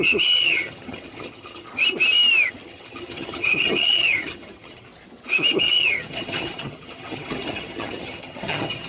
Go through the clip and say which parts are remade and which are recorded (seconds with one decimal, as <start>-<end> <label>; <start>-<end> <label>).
0.0-1.7 remade; 1.7-2.5 recorded; 2.5-4.9 remade; 4.9-5.6 recorded; 5.6-8.9 remade